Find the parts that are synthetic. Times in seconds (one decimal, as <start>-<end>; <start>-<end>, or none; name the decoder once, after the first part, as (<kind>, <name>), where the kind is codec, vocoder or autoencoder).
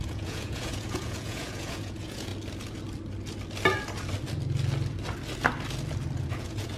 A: 0.0-2.3 (vocoder, Vocos); 6.3-6.8